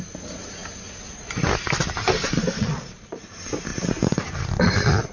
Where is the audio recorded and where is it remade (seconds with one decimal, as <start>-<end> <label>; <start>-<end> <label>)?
0.0-2.6 recorded; 2.6-3.2 remade; 3.2-5.1 recorded